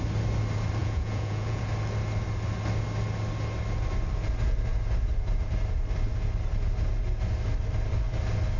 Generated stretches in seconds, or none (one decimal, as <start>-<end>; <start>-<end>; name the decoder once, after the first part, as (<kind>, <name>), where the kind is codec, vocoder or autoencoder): 0.8-1.6 (vocoder, Vocos)